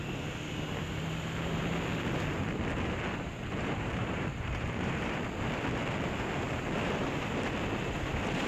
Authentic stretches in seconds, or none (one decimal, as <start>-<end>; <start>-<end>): 0.0-3.1; 5.2-8.5